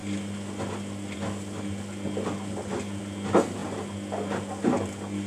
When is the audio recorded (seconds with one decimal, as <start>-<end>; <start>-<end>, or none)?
3.0-3.6